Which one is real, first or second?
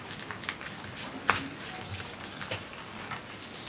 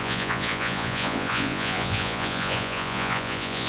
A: first